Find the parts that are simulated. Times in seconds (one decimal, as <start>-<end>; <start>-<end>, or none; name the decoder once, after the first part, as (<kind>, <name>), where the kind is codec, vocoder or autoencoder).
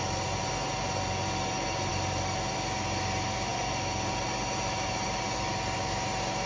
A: none